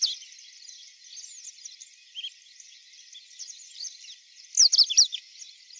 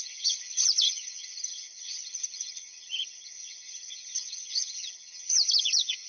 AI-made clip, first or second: second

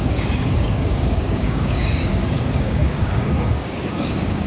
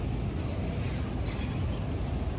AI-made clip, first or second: first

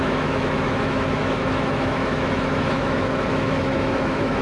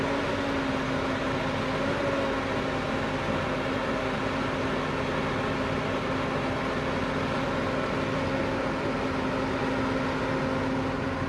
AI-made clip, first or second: first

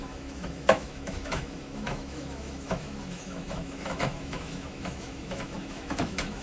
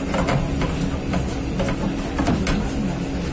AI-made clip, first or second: first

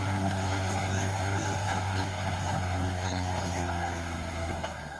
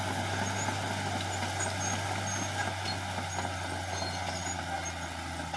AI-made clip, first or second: first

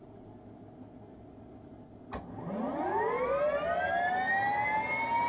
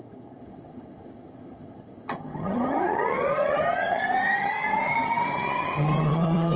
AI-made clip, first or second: second